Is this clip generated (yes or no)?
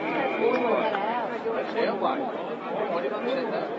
yes